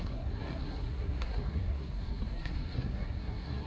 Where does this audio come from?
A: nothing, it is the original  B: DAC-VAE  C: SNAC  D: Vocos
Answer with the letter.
C